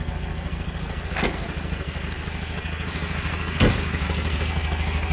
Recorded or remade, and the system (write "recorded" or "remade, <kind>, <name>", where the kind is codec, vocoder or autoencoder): remade, codec, SNAC